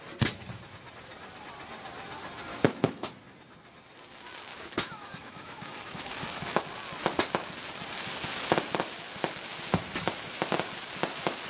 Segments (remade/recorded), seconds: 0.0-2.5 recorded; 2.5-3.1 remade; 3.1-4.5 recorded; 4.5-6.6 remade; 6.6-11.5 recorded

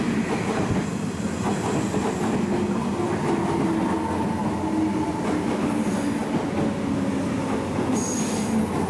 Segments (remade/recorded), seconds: 0.0-8.9 recorded

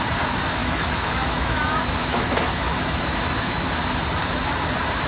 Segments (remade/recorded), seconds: 0.0-0.6 recorded; 0.6-3.7 remade; 3.7-5.1 recorded

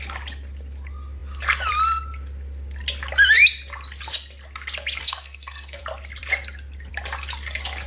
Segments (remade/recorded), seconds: 0.0-5.0 recorded; 5.0-5.8 remade; 5.8-7.9 recorded

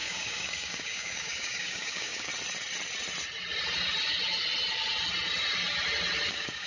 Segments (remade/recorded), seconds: 0.0-2.3 remade; 2.3-6.3 recorded; 6.3-6.7 remade

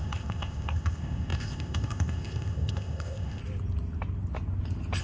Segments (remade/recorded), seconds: 0.0-3.4 remade; 3.4-5.0 recorded

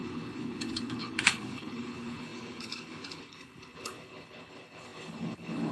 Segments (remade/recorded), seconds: 0.0-5.7 remade

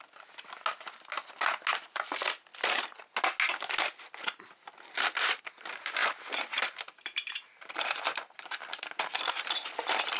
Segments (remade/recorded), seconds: 0.0-6.0 recorded; 6.0-9.7 remade; 9.7-10.2 recorded